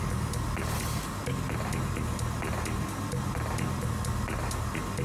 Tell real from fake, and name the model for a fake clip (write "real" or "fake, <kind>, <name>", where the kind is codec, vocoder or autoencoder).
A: real